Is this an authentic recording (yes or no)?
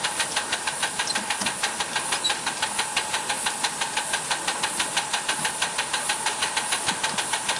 yes